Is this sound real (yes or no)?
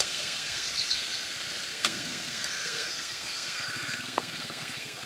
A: no